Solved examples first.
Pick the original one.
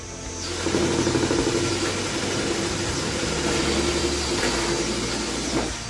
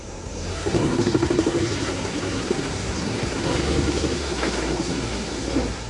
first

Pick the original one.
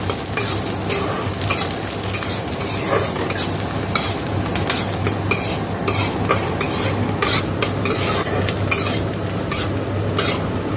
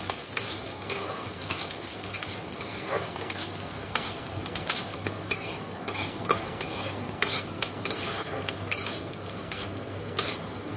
first